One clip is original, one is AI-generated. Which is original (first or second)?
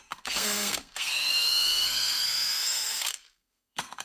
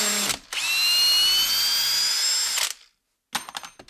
second